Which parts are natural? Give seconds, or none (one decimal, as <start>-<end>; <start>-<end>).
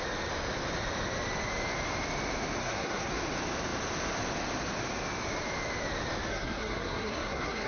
0.0-2.6; 3.1-6.3